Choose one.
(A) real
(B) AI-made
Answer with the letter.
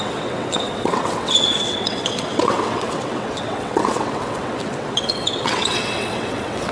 B